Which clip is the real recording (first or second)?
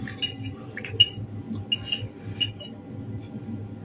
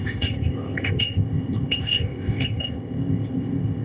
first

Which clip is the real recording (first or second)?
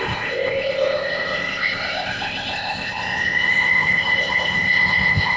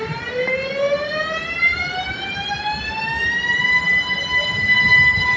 second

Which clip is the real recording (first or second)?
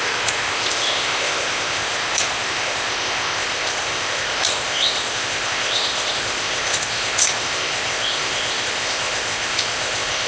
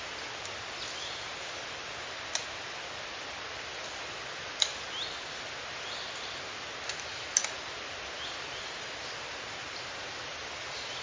second